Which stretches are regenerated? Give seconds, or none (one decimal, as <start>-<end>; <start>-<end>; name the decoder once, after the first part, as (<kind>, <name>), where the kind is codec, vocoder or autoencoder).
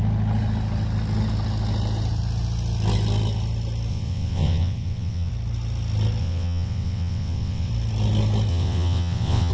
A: 3.9-5.3 (vocoder, WaveNeXt); 6.2-7.7; 8.5-9.5